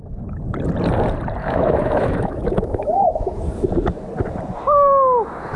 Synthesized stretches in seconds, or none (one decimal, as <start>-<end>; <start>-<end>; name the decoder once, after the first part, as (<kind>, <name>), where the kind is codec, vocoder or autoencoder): 1.4-3.4 (autoencoder, DAC-VAE)